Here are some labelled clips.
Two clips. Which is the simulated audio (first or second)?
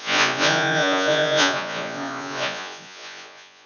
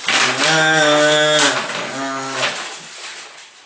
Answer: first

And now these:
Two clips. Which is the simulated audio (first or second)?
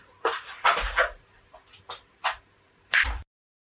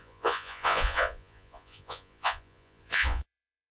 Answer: second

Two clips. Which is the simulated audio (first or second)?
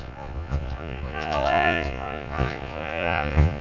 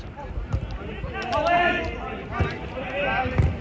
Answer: first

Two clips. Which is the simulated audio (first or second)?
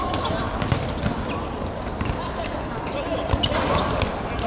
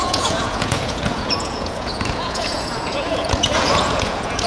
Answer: second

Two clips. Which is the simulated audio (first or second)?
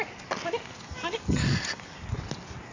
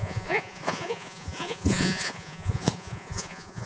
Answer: second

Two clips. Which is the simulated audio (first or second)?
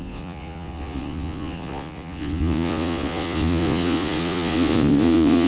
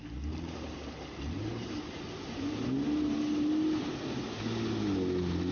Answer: first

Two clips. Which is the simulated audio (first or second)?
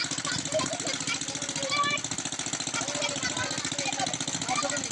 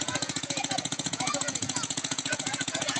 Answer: second